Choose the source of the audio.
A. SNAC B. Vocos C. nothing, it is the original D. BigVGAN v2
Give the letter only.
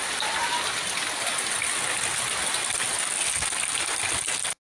C